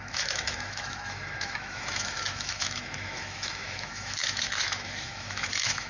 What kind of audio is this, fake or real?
fake